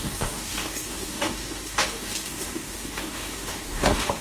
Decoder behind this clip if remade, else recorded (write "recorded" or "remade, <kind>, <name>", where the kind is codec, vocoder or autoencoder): remade, codec, DAC